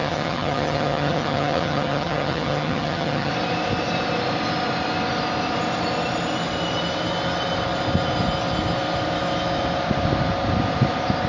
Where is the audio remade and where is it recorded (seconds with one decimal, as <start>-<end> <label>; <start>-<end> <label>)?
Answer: 0.0-3.3 remade; 3.3-11.3 recorded